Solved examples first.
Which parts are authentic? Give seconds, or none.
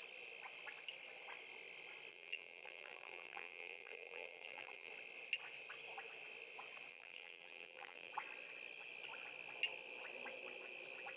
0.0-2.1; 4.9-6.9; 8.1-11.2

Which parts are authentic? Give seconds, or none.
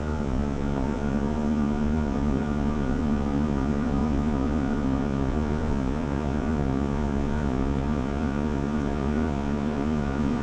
none